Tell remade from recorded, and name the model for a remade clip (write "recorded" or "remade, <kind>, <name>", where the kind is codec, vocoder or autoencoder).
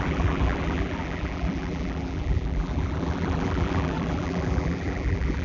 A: remade, vocoder, BigVGAN v2